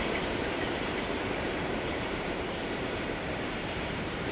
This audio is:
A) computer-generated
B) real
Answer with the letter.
A